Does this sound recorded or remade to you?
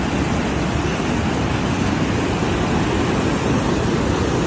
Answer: recorded